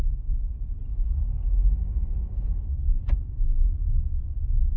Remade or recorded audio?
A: recorded